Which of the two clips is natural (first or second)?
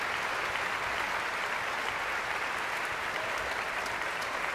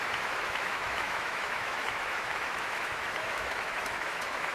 first